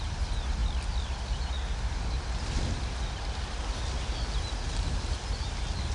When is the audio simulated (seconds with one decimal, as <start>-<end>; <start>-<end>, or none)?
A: none